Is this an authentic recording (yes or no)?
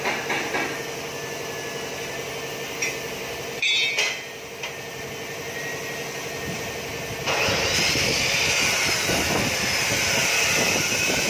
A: yes